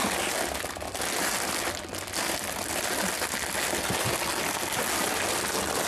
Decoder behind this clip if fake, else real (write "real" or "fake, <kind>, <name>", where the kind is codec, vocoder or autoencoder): real